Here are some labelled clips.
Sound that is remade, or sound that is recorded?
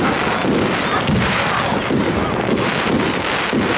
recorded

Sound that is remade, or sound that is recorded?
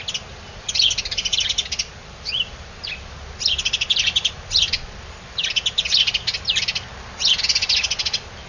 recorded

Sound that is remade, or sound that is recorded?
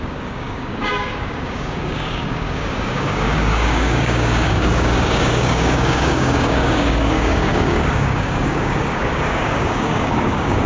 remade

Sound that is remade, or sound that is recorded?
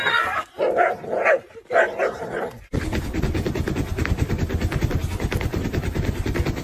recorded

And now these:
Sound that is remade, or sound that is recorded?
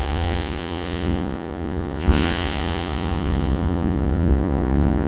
remade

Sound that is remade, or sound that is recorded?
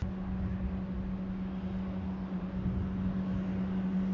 recorded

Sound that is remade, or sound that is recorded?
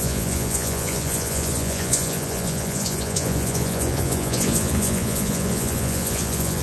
remade